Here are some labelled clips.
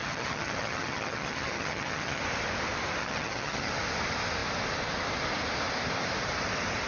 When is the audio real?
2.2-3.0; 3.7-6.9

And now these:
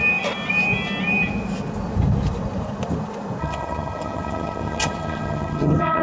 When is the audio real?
0.0-3.4

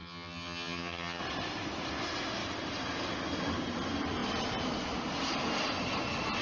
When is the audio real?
1.2-6.4

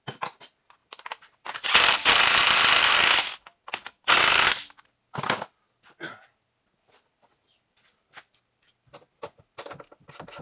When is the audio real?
0.0-10.4